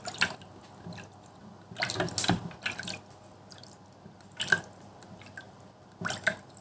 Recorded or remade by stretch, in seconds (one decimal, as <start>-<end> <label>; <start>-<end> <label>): 0.0-6.6 recorded